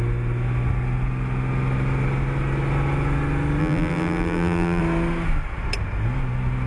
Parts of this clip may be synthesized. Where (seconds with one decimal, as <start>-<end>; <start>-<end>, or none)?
3.6-4.8

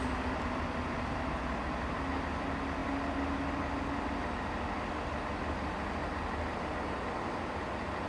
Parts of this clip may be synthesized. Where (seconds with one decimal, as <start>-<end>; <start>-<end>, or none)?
none

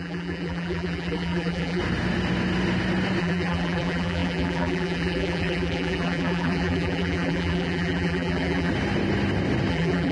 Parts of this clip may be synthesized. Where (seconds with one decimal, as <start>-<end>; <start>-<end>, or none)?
0.0-1.8; 3.2-8.7; 9.7-10.1

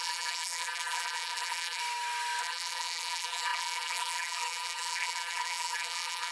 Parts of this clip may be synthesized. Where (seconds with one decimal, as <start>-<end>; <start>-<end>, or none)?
0.0-1.8; 2.4-6.3

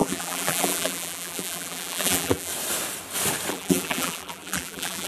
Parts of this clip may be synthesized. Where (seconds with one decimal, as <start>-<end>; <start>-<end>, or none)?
0.0-2.5; 3.5-5.1

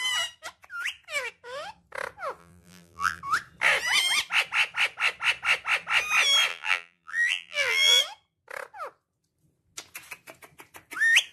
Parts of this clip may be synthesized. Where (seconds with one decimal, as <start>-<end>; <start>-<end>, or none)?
2.4-3.2; 6.5-8.0

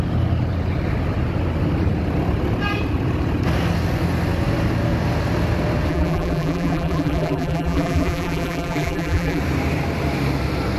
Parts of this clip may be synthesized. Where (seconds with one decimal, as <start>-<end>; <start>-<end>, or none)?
5.9-9.4